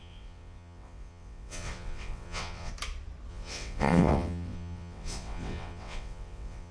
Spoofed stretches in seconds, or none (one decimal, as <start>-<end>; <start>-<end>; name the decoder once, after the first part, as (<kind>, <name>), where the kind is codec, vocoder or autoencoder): 0.0-2.7 (vocoder, WaveNeXt); 3.3-6.7